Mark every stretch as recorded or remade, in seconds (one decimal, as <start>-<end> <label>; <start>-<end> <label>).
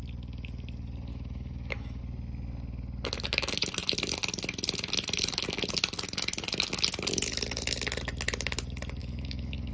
0.0-1.1 recorded; 1.1-2.0 remade; 2.0-9.0 recorded; 9.0-9.7 remade